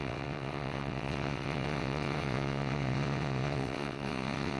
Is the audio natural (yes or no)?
no